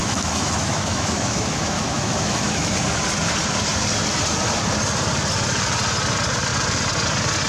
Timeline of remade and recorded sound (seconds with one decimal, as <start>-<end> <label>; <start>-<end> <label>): 0.0-2.7 remade; 2.7-7.5 recorded